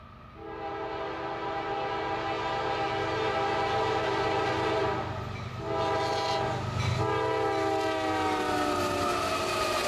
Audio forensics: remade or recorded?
recorded